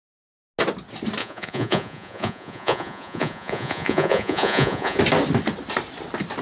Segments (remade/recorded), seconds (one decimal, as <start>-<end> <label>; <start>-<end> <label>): 0.0-1.2 recorded; 1.2-5.0 remade; 5.0-6.4 recorded

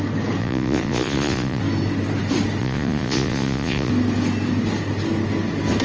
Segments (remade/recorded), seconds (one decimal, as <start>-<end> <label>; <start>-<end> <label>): 0.0-0.4 recorded; 0.4-1.6 remade; 1.6-2.6 recorded; 2.6-3.9 remade; 3.9-5.8 recorded

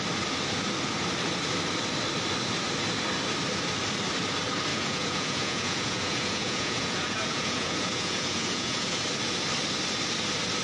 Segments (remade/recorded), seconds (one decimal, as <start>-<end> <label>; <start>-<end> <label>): 0.0-4.7 recorded; 4.7-9.0 remade; 9.0-10.6 recorded

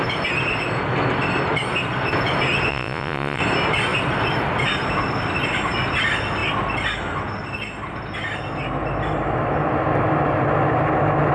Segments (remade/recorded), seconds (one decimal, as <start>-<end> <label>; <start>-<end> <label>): 0.0-2.7 recorded; 2.7-3.4 remade; 3.4-11.3 recorded

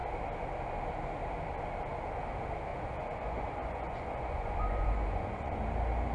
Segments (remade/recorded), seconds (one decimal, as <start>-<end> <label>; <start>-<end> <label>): 0.0-2.7 recorded; 2.7-5.6 remade; 5.6-6.1 recorded

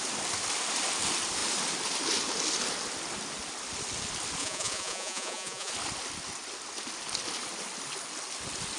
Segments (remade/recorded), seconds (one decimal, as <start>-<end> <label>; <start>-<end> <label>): 0.0-4.4 recorded; 4.4-5.7 remade; 5.7-8.8 recorded

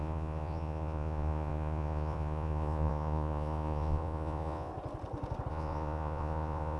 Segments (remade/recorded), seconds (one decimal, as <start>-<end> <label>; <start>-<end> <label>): 0.0-4.7 remade; 4.7-5.5 recorded; 5.5-6.8 remade

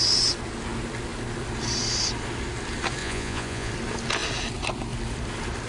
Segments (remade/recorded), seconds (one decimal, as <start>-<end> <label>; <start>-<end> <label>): 0.0-3.0 recorded; 3.0-3.7 remade; 3.7-5.7 recorded